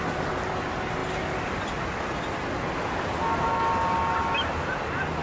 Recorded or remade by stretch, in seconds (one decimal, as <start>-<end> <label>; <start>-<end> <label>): 0.0-5.2 recorded